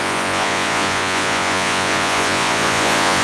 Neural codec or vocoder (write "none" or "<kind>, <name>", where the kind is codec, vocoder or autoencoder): vocoder, Vocos